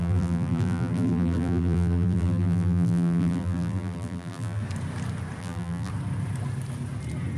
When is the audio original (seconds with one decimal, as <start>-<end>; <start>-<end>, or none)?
4.6-5.4; 5.9-7.4